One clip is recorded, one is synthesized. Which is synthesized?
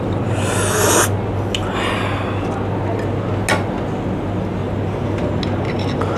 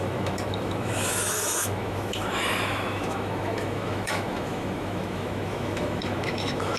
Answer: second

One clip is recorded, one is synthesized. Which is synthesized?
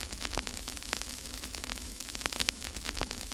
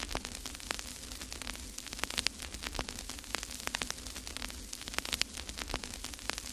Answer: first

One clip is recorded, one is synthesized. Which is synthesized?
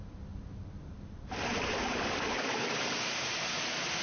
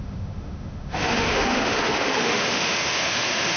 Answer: second